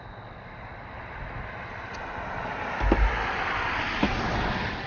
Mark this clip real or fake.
real